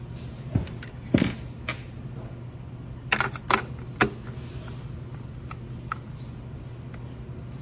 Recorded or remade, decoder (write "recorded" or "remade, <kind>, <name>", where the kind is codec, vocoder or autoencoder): recorded